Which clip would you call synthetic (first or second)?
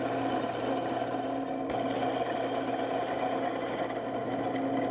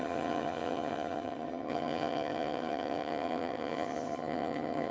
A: second